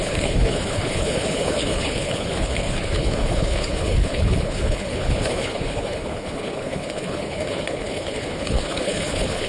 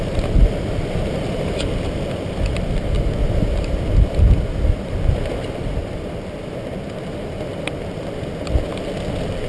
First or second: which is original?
second